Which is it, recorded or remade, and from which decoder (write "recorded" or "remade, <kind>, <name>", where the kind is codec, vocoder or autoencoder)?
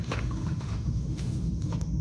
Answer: remade, autoencoder, DAC-VAE